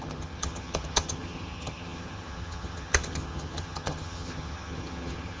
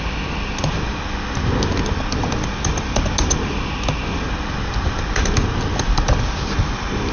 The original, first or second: second